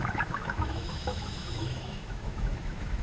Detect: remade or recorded remade